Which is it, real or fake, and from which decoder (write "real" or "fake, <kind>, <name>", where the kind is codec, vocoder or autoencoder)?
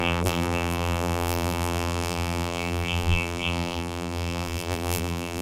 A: fake, vocoder, BigVGAN v2